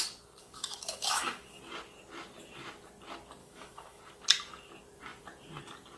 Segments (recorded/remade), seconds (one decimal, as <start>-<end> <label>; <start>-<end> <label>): 0.0-0.4 recorded; 0.4-1.6 remade; 1.6-3.4 recorded; 3.4-4.0 remade; 4.0-6.0 recorded